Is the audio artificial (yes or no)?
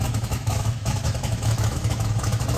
yes